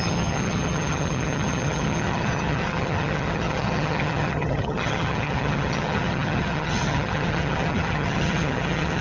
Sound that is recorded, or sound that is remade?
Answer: remade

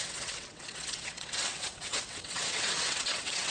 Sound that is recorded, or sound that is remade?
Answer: remade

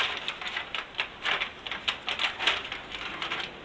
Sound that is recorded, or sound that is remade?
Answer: recorded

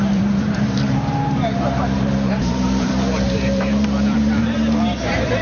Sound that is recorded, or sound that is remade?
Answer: remade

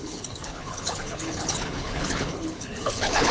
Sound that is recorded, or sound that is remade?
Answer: remade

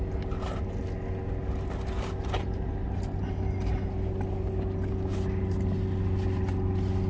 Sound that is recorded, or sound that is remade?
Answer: recorded